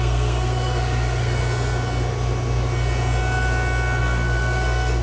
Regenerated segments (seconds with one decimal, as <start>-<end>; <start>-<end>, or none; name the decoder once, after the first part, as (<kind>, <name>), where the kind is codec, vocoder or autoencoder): 0.0-1.4 (codec, SNAC); 4.0-5.0